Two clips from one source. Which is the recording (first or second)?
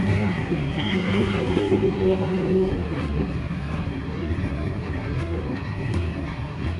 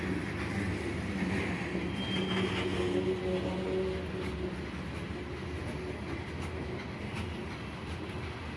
second